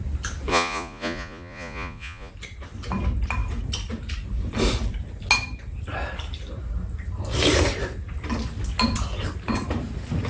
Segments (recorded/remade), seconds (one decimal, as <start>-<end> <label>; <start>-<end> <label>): 0.0-0.5 recorded; 0.5-2.3 remade; 2.3-10.3 recorded